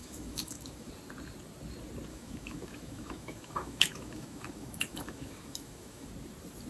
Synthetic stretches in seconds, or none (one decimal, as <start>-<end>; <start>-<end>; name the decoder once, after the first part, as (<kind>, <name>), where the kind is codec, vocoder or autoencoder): 0.0-0.9 (autoencoder, DAC-VAE); 2.1-6.1